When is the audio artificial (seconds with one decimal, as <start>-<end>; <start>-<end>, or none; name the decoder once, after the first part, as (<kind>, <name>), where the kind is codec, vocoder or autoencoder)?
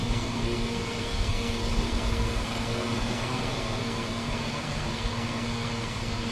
0.0-6.3 (codec, SNAC)